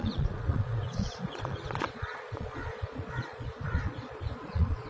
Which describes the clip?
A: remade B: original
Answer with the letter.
A